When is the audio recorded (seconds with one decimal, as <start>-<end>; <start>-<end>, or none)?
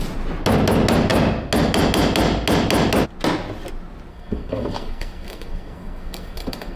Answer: 0.0-4.1